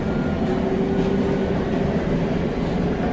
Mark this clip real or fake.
real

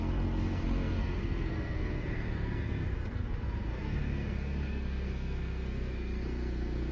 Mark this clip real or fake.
fake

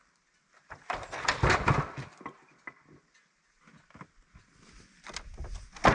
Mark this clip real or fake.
real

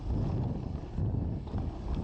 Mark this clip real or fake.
real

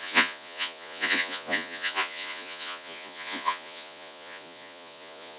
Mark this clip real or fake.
fake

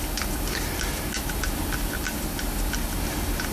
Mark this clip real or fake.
real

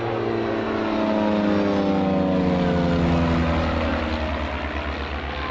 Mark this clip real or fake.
real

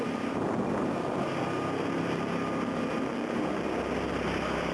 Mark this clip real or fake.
real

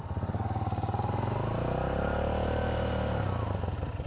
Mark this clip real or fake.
real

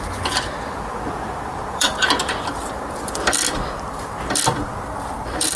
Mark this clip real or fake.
fake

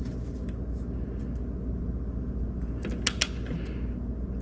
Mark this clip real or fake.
real